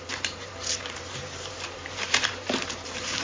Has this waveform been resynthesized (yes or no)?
yes